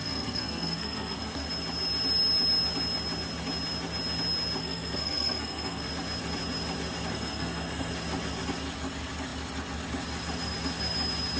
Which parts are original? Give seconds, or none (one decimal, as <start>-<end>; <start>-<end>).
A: 1.5-4.6; 5.9-7.1; 7.9-11.4